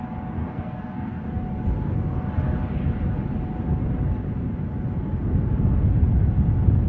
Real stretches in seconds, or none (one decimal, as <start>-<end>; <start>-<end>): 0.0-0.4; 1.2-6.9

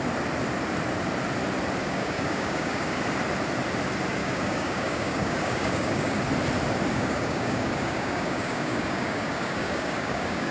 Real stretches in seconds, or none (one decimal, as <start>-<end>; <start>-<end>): 0.0-1.8; 3.0-4.2; 6.2-6.9

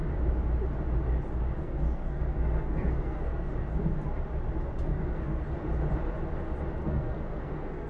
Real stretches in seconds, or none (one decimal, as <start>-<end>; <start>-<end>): 0.0-1.6; 3.5-4.9; 5.4-6.8

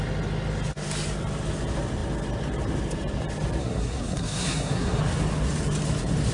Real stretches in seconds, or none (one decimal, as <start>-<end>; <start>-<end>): 0.0-3.6; 5.0-6.3

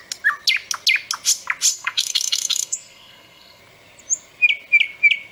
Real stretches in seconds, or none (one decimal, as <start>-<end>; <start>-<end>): 0.0-1.7; 3.6-5.3

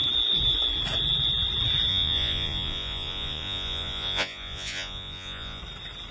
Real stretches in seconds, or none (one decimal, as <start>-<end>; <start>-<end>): 0.0-1.9; 5.6-6.1

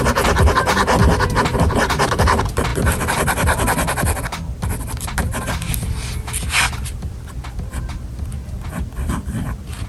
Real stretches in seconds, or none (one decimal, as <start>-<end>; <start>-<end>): 0.0-9.9